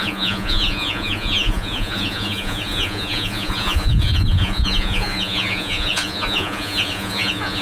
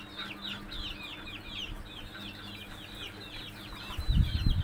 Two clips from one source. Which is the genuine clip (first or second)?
second